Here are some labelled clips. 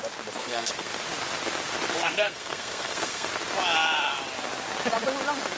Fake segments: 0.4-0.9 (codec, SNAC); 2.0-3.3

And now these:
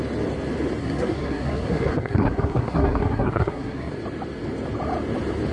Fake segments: 0.8-3.9 (codec, SNAC)

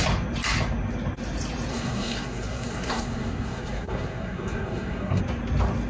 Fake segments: 1.7-5.2 (codec, SNAC)

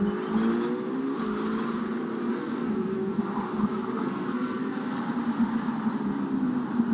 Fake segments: 2.3-3.2 (codec, SNAC); 3.7-5.1

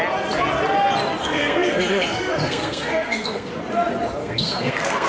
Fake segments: 1.2-3.5 (codec, SNAC); 4.2-5.1